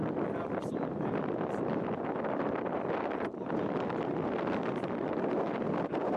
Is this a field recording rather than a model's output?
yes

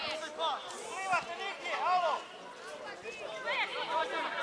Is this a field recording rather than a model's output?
yes